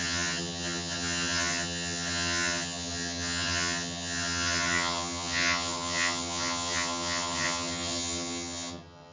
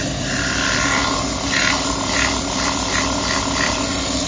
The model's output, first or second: first